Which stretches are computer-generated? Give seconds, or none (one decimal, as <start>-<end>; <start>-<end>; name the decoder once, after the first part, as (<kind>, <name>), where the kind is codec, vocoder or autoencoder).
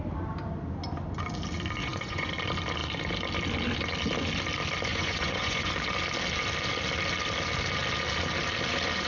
1.8-2.3 (vocoder, Vocos); 4.9-5.7